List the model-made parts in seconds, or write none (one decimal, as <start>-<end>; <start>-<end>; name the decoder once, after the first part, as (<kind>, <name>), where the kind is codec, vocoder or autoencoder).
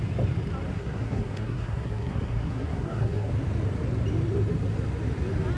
0.7-3.3 (codec, SNAC)